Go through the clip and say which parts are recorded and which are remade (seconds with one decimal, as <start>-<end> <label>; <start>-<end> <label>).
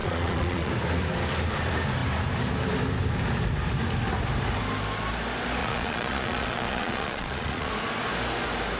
0.0-0.7 remade; 0.7-5.6 recorded; 5.6-7.7 remade; 7.7-8.8 recorded